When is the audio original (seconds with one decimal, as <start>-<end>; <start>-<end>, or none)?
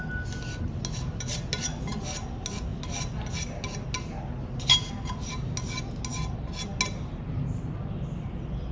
0.0-8.7